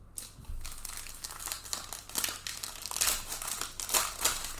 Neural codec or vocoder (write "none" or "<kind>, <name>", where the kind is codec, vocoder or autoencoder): none